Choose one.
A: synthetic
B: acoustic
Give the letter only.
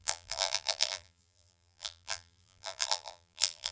A